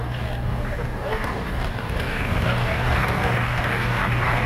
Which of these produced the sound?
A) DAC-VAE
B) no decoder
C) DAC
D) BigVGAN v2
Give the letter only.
C